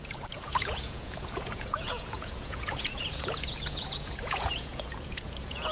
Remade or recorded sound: remade